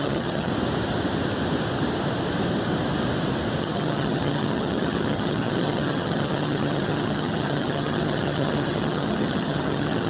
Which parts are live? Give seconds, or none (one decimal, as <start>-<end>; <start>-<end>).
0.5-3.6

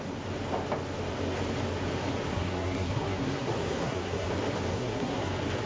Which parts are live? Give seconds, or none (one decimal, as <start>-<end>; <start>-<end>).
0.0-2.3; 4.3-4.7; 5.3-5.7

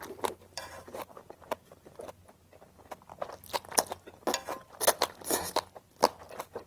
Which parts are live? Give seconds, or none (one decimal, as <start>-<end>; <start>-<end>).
2.2-6.2